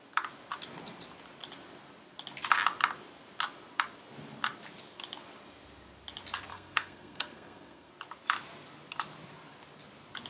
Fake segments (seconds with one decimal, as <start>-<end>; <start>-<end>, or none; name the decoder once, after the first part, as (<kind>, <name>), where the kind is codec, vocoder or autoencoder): 6.5-7.9 (codec, SNAC)